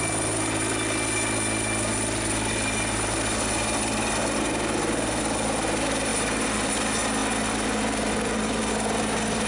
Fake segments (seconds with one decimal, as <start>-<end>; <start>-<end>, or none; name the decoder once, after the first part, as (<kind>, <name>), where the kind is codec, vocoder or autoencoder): 4.2-5.2 (vocoder, BigVGAN v2); 6.1-6.7